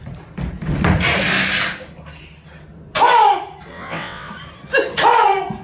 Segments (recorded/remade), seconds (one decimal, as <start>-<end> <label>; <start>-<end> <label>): 0.0-3.7 recorded; 3.7-4.3 remade; 4.3-5.6 recorded

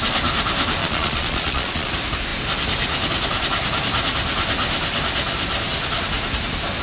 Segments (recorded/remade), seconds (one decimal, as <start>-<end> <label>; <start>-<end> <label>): 0.0-0.8 recorded; 0.8-1.9 remade; 1.9-6.8 recorded

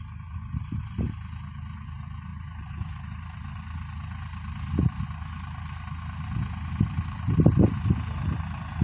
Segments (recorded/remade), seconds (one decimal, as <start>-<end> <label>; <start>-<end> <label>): 0.0-2.3 recorded; 2.3-3.1 remade; 3.1-8.8 recorded

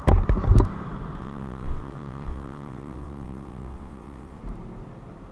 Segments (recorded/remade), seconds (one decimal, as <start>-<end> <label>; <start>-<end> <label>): 0.0-1.2 recorded; 1.2-4.4 remade; 4.4-5.3 recorded

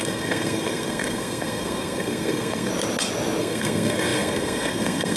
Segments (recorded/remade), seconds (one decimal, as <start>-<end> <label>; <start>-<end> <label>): 0.0-2.7 remade; 2.7-3.4 recorded; 3.4-5.2 remade

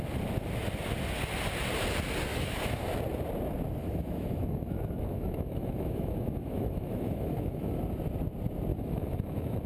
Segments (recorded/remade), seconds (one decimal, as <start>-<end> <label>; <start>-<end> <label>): 0.0-2.3 recorded; 2.3-2.9 remade; 2.9-3.8 recorded; 3.8-7.8 remade; 7.8-8.7 recorded; 8.7-9.7 remade

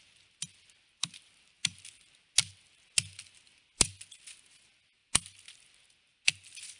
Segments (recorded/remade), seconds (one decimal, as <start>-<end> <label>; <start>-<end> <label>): 0.0-6.8 recorded

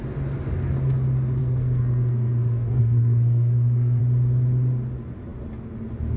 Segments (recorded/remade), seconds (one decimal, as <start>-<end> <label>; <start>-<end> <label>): 0.0-1.4 recorded; 1.4-4.0 remade; 4.0-6.2 recorded